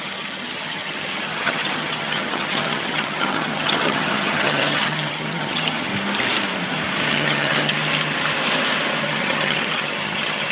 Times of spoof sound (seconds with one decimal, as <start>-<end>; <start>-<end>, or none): 0.0-5.9; 7.1-7.8; 9.0-10.5